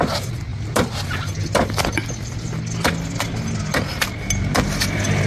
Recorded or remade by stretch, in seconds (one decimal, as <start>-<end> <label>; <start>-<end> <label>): 0.0-5.3 recorded